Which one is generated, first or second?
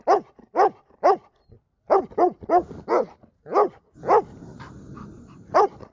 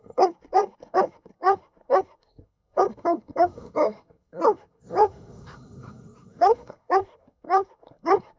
second